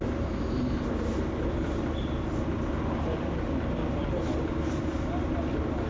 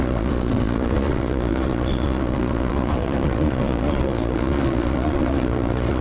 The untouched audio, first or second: first